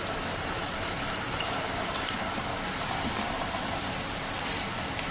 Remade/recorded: remade